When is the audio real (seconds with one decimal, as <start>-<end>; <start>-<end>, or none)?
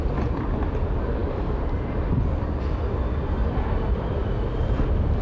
0.0-1.2; 4.1-5.2